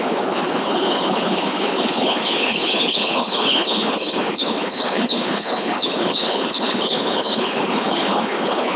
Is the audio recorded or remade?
remade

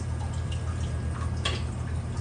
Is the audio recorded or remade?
recorded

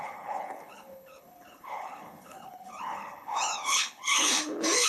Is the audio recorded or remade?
remade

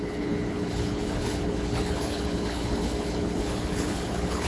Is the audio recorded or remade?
remade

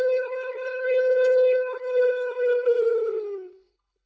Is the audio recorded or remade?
remade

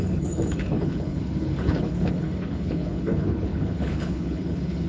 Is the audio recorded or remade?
remade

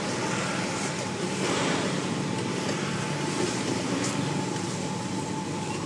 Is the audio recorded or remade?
recorded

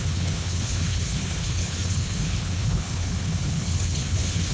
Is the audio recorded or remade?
remade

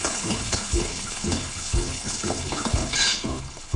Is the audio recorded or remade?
remade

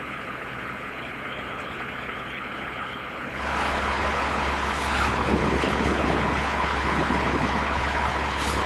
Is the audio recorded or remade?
remade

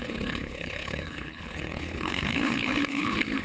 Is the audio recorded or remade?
remade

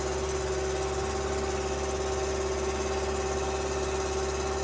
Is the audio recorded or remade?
recorded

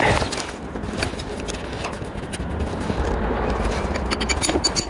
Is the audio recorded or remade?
recorded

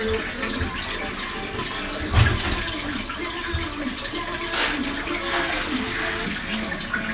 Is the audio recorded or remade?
recorded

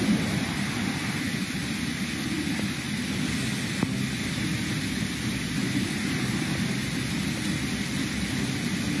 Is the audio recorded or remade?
recorded